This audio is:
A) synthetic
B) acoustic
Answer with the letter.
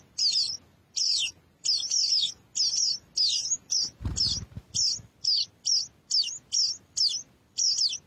B